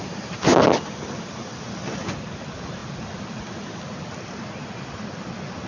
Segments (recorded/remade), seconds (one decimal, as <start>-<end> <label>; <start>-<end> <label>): 0.0-0.5 recorded; 0.5-1.6 remade; 1.6-2.8 recorded; 2.8-4.2 remade; 4.2-5.7 recorded